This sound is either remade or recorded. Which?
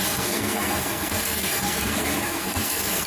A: remade